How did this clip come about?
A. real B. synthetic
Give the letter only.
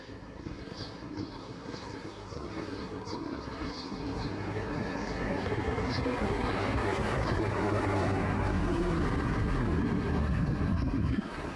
B